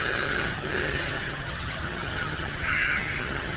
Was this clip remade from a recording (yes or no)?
yes